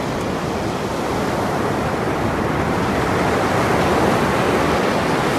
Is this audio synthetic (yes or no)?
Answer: no